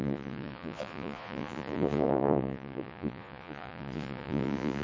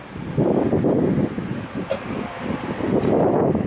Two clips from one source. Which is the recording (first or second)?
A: second